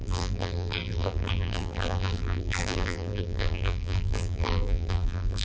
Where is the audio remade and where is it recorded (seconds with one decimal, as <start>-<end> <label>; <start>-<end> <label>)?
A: 0.0-5.4 remade

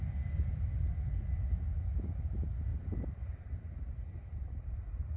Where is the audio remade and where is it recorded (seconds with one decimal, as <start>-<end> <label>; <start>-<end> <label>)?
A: 0.0-2.7 recorded; 2.7-5.2 remade

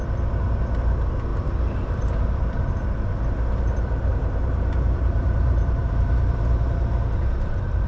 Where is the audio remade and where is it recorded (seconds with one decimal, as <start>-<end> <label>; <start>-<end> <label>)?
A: 0.0-1.3 recorded; 1.3-2.9 remade; 2.9-4.1 recorded; 4.1-7.9 remade